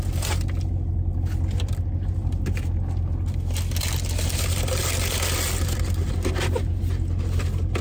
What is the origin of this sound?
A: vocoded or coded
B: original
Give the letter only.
B